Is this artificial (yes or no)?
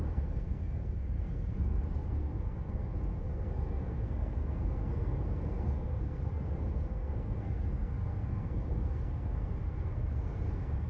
yes